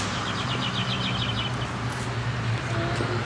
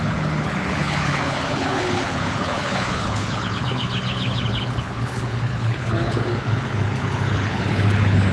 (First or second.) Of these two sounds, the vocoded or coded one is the second